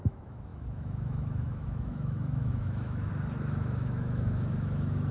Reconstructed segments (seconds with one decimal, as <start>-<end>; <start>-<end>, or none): 0.0-5.1